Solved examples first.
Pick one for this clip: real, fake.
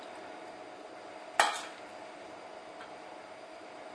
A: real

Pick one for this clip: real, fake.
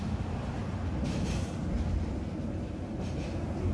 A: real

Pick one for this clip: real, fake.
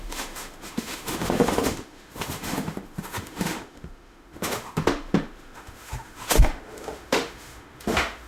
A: fake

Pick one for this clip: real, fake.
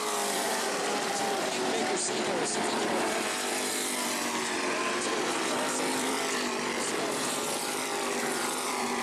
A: fake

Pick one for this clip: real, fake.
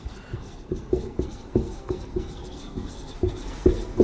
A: fake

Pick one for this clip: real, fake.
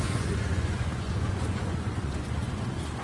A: fake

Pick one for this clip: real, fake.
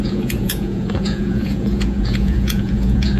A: fake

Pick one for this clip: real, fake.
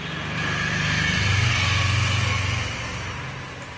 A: real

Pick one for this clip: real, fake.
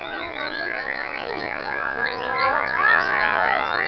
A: fake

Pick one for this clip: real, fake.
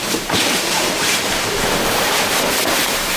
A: fake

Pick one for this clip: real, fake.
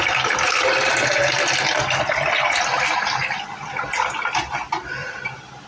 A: real